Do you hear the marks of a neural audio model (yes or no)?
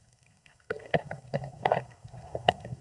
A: yes